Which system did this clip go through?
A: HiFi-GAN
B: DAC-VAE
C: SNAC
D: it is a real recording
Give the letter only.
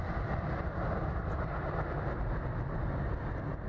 D